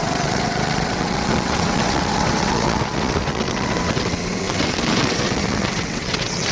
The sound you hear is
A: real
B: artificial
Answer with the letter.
B